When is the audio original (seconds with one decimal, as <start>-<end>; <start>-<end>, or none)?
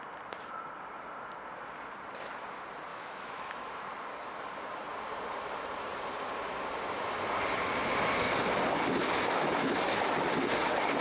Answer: 0.0-2.9; 3.5-9.0; 9.8-11.0